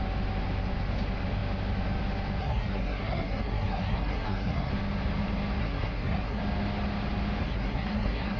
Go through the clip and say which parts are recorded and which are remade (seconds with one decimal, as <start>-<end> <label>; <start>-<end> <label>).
0.0-2.4 recorded; 2.4-4.7 remade; 4.7-5.6 recorded; 5.6-6.4 remade; 6.4-7.4 recorded; 7.4-8.4 remade